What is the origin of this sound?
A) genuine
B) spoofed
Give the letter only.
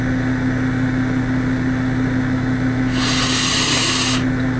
A